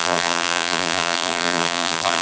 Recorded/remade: remade